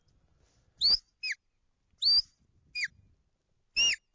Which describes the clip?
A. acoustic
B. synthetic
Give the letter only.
A